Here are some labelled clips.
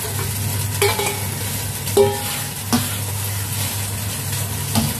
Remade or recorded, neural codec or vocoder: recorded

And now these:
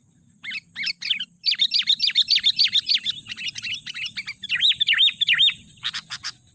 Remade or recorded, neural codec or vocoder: recorded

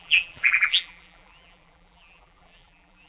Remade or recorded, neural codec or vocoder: remade, vocoder, BigVGAN v2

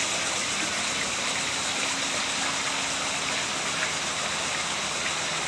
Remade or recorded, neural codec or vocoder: recorded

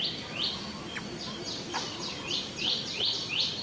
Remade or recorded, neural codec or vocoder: recorded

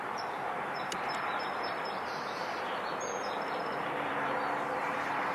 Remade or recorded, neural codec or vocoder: remade, vocoder, BigVGAN v2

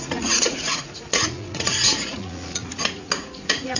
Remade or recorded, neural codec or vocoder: remade, vocoder, Vocos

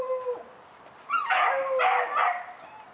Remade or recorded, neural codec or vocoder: recorded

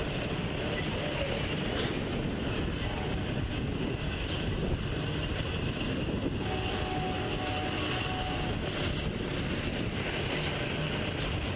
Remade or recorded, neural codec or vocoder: recorded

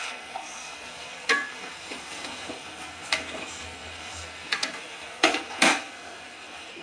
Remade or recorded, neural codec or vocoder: remade, codec, SNAC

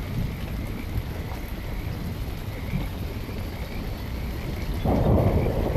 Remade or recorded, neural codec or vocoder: recorded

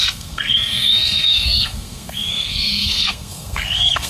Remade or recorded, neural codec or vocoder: remade, codec, SNAC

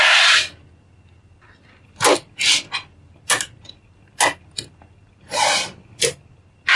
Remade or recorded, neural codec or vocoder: recorded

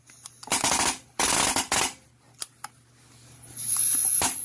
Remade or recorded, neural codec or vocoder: recorded